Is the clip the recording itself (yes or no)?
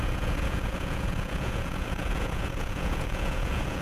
no